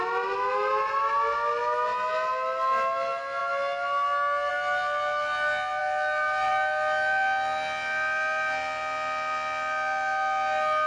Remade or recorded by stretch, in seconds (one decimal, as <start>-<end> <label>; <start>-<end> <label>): 0.0-10.9 recorded